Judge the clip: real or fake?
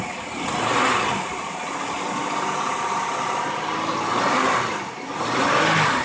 real